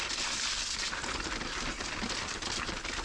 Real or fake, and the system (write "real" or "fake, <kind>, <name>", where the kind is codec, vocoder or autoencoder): real